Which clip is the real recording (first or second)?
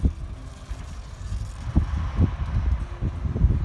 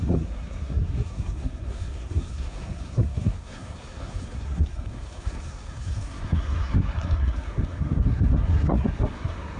first